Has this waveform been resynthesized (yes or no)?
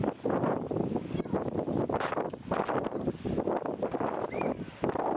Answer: no